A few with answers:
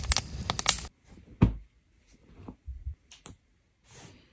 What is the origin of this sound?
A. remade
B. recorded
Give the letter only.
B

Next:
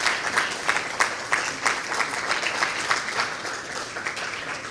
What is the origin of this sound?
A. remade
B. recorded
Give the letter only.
B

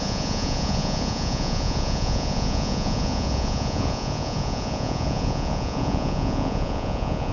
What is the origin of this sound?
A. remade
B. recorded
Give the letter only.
A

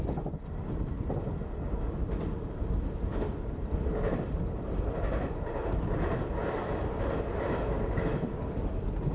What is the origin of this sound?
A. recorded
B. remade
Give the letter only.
A